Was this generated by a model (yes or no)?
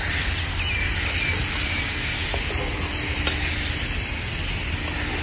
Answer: no